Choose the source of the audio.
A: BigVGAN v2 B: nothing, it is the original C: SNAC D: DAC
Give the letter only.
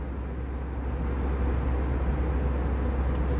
B